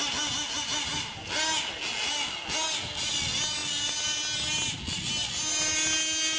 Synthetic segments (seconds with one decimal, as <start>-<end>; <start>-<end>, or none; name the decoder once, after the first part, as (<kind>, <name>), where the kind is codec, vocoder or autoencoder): none